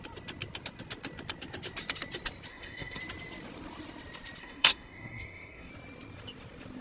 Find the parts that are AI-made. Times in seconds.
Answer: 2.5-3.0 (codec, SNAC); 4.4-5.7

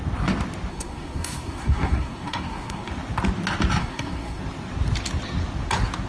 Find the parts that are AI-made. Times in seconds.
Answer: 0.7-2.9 (codec, SNAC); 3.8-4.4